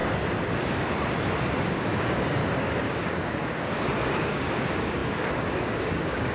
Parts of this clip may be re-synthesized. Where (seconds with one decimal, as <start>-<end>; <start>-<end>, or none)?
1.6-2.4; 3.0-6.3